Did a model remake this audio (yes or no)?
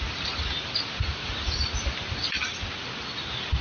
no